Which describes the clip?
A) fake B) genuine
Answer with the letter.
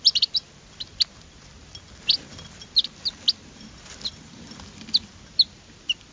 B